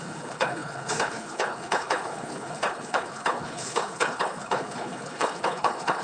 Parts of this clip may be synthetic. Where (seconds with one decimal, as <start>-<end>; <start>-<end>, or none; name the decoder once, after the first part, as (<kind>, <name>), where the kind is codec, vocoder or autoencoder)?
0.0-6.0 (codec, HILCodec)